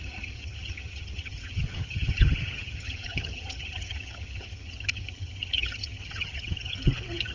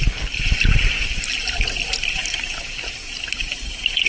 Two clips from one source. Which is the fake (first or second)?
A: first